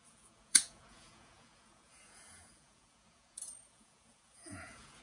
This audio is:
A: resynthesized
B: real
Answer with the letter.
A